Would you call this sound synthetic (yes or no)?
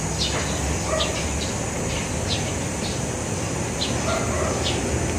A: no